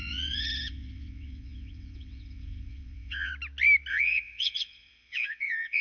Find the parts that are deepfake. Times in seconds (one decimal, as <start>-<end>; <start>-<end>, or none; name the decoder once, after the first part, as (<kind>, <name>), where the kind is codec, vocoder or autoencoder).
0.0-3.3 (vocoder, WaveNeXt); 3.9-5.8